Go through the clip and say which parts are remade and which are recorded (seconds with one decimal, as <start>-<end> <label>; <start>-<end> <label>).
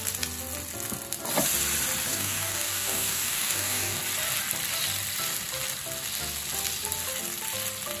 0.0-2.1 recorded; 2.1-4.0 remade; 4.0-8.0 recorded